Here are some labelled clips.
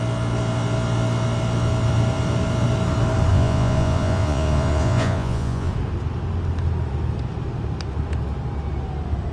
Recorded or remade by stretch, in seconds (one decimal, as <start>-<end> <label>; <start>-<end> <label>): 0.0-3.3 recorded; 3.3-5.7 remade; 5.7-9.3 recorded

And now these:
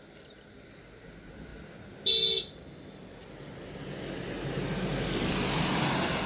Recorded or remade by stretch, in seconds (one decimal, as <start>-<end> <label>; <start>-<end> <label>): 0.0-6.3 recorded

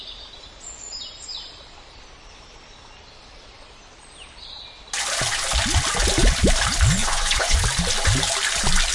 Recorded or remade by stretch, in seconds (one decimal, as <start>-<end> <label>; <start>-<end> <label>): 0.0-7.0 recorded; 7.0-7.6 remade; 7.6-8.9 recorded

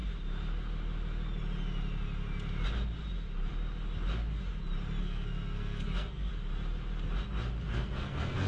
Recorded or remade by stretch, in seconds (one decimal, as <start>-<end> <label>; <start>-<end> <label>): 0.0-5.0 recorded; 5.0-6.3 remade; 6.3-7.7 recorded; 7.7-8.5 remade